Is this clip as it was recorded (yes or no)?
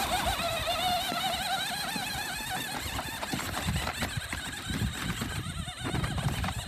no